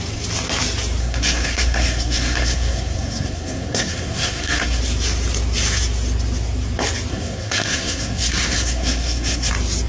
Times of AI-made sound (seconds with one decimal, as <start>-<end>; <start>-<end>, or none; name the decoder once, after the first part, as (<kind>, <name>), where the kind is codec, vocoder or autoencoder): 1.0-4.8 (codec, SNAC); 7.1-9.5